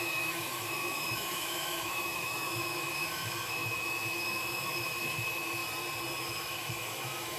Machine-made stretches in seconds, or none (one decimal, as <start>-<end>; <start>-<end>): 0.0-5.6; 6.2-7.4